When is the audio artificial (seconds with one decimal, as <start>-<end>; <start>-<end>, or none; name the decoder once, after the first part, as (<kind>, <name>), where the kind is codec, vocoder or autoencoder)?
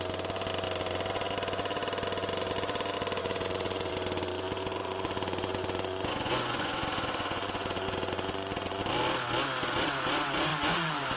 3.2-3.9 (vocoder, Vocos); 4.8-8.8; 10.5-11.2